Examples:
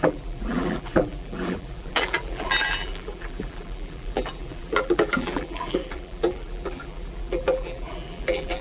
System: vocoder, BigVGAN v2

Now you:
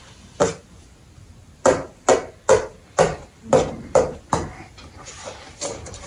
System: none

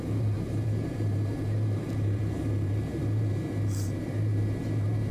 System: vocoder, BigVGAN v2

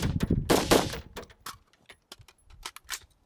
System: none